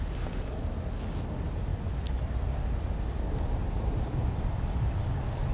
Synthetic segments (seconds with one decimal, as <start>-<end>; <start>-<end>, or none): none